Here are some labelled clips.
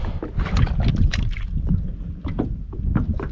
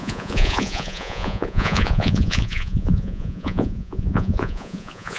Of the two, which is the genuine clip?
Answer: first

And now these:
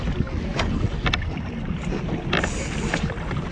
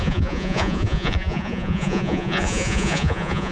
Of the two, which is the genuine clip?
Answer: first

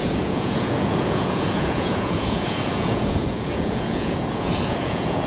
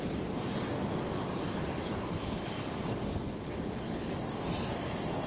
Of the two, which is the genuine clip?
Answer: second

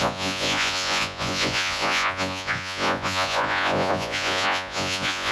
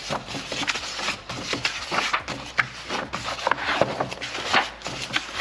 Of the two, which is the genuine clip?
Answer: second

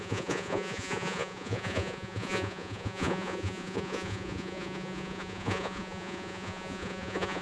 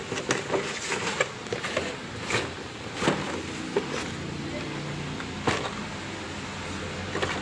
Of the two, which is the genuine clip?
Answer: second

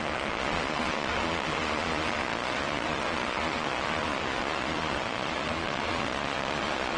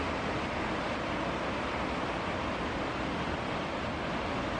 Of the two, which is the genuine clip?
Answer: second